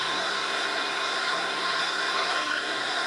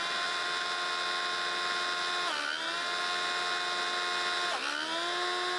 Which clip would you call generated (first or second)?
first